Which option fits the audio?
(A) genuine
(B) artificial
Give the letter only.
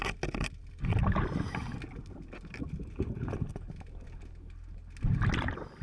A